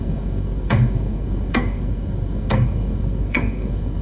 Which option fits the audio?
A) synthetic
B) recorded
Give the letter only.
A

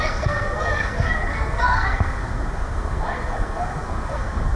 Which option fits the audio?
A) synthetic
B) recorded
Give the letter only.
A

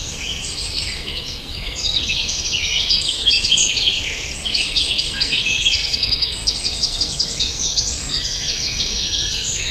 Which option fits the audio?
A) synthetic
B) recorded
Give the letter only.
A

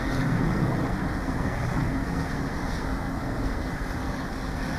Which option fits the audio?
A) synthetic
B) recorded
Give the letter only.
A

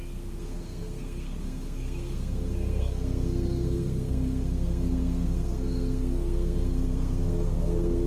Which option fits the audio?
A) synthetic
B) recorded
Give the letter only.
A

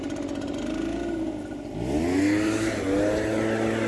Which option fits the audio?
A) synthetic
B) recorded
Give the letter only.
B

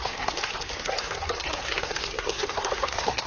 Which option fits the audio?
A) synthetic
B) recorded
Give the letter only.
A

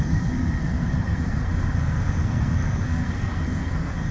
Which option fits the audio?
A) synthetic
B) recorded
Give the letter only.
A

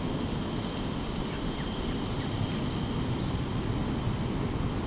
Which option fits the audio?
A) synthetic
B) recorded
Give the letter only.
B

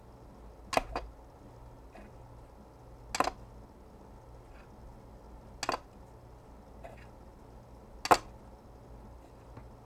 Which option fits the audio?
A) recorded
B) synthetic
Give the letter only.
A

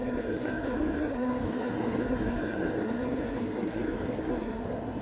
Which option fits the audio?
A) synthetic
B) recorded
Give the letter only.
A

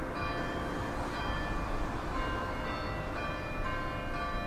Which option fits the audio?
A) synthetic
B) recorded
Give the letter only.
B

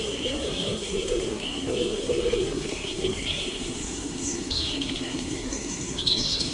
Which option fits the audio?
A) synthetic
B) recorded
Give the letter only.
A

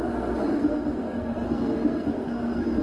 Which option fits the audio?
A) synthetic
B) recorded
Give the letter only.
A